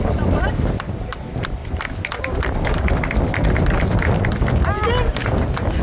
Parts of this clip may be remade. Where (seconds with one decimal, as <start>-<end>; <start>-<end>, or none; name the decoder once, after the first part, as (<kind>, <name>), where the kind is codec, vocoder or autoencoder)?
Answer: none